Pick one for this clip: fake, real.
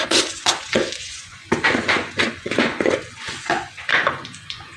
fake